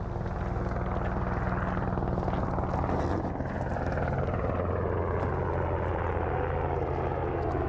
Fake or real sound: real